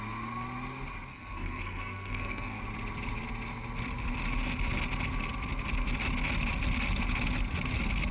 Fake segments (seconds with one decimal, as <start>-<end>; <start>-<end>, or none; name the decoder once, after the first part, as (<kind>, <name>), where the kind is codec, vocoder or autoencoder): 1.1-2.6 (codec, SNAC)